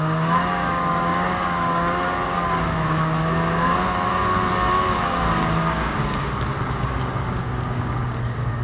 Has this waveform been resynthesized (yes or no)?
yes